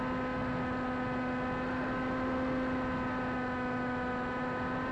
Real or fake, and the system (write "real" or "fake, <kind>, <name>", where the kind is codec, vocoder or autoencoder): real